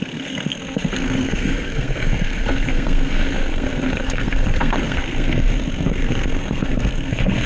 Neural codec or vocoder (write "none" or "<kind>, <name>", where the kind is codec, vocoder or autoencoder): codec, SNAC